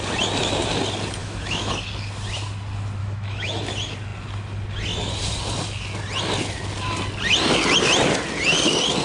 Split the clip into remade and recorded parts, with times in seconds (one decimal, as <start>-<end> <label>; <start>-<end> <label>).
0.0-1.2 recorded; 1.2-1.7 remade; 1.7-3.0 recorded; 3.0-3.6 remade; 3.6-9.0 recorded